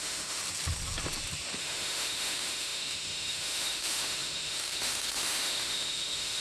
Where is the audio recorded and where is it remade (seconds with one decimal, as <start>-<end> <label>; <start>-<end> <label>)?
0.0-0.4 remade; 0.4-1.6 recorded; 1.6-6.4 remade